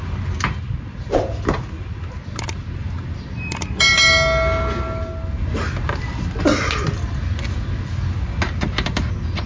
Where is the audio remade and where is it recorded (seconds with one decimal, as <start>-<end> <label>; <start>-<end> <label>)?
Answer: 0.0-9.5 recorded